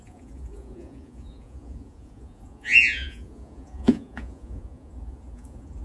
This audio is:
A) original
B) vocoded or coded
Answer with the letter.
B